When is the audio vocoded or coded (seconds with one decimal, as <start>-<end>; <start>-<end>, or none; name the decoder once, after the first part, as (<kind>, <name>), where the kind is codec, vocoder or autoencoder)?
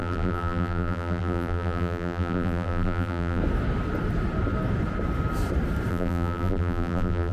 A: 0.0-3.4 (vocoder, BigVGAN v2); 5.9-7.3